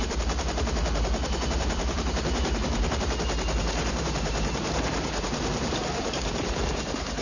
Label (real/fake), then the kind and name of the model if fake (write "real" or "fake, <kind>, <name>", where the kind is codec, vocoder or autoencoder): fake, vocoder, BigVGAN v2